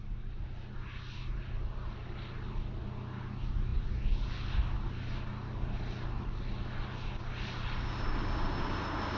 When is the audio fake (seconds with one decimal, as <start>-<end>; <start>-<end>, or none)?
none